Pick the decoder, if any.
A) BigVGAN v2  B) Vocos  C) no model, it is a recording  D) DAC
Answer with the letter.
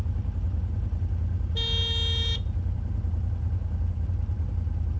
C